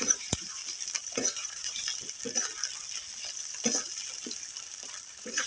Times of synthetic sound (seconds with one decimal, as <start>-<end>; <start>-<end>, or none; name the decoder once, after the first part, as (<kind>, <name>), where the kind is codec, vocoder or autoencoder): 0.0-0.6 (vocoder, Vocos); 1.1-1.8; 5.1-5.5